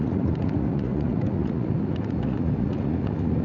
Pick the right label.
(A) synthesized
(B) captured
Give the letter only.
A